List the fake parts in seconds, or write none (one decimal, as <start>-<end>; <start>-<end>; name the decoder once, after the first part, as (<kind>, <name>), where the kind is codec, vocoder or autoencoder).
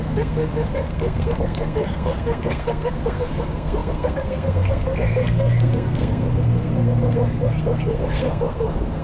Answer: 0.0-9.0 (codec, SNAC)